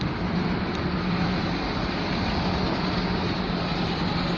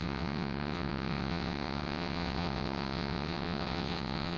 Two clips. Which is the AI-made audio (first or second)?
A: second